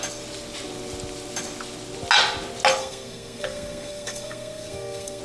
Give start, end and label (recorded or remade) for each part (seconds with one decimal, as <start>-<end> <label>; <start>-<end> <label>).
0.0-2.8 recorded; 2.8-5.2 remade